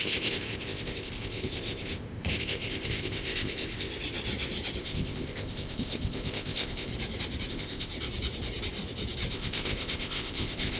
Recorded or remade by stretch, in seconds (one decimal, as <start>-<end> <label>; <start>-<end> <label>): 0.0-3.9 remade; 3.9-4.8 recorded; 4.8-6.9 remade; 6.9-7.5 recorded; 7.5-7.9 remade; 7.9-9.3 recorded; 9.3-10.8 remade